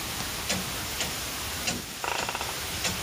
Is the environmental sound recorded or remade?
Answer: recorded